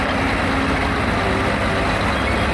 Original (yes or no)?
yes